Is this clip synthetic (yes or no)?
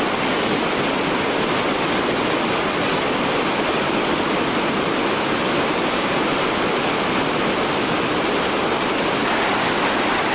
no